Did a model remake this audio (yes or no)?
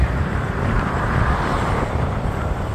yes